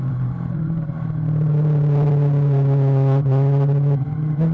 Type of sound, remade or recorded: remade